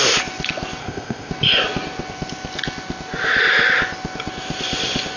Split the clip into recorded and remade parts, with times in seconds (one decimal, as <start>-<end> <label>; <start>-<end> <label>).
0.0-0.8 recorded; 0.8-1.3 remade; 1.3-5.2 recorded